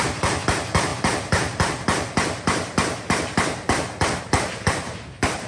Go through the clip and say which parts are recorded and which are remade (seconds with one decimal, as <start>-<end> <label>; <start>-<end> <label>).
0.0-0.9 remade; 0.9-4.2 recorded; 4.2-5.5 remade